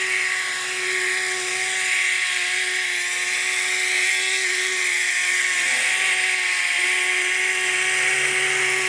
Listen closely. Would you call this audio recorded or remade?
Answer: recorded